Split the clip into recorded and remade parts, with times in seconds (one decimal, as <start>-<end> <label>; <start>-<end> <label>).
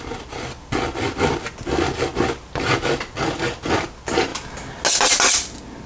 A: 0.0-5.9 recorded